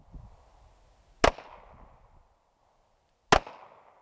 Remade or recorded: recorded